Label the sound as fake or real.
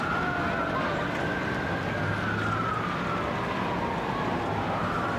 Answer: real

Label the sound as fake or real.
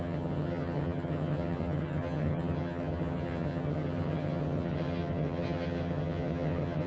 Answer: fake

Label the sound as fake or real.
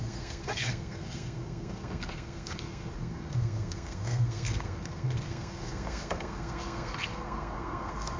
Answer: fake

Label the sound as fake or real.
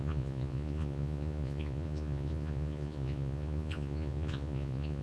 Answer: fake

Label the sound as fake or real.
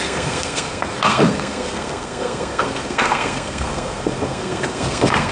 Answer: fake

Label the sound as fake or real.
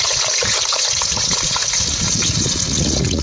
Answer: fake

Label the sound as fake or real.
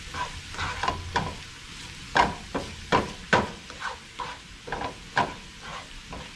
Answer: real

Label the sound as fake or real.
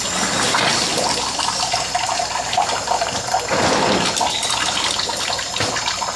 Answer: real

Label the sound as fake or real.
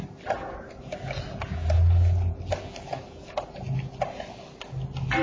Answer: real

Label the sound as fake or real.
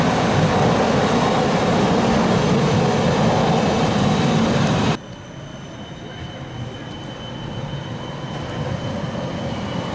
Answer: real